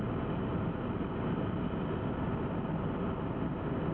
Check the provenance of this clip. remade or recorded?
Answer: recorded